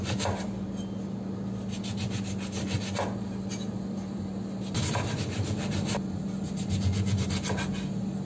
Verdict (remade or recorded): recorded